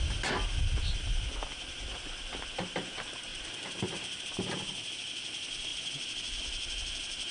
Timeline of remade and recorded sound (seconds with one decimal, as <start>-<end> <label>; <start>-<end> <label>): 0.0-3.3 recorded; 3.3-4.2 remade; 4.2-7.3 recorded

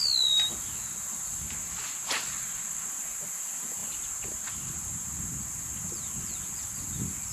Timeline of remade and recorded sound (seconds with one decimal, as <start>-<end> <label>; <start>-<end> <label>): 0.0-1.3 recorded; 1.3-1.8 remade; 1.8-7.3 recorded